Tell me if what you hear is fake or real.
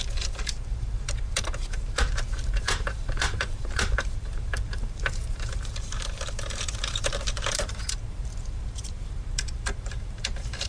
fake